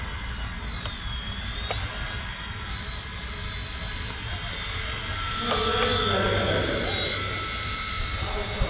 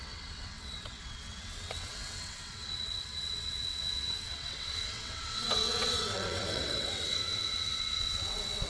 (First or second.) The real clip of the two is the first